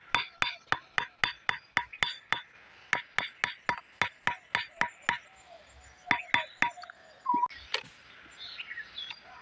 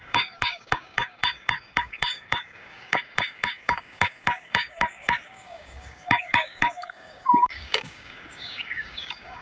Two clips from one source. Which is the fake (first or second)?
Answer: second